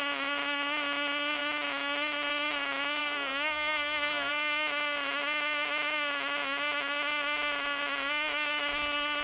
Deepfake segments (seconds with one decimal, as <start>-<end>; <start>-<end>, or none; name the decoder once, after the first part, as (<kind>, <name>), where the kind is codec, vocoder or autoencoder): 3.0-4.3 (codec, SNAC)